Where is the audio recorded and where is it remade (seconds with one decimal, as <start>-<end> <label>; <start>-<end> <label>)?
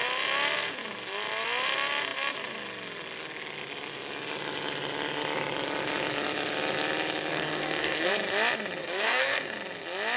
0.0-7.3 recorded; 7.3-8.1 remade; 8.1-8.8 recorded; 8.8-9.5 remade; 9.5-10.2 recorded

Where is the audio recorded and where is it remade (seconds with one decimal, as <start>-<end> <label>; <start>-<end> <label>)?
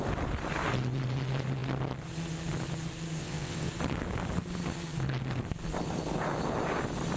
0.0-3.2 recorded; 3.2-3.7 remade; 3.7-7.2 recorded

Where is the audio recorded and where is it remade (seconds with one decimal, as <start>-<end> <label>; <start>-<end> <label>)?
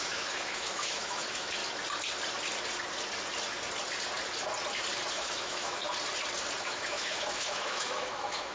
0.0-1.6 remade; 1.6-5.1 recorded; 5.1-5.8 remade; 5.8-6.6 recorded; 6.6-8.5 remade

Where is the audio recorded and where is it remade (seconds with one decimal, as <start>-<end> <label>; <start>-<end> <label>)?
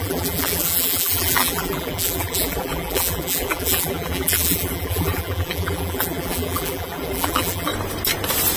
0.0-7.7 remade; 7.7-8.6 recorded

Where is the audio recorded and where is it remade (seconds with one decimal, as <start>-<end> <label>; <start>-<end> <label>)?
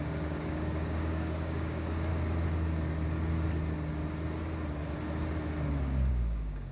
0.0-2.1 remade; 2.1-6.1 recorded; 6.1-6.7 remade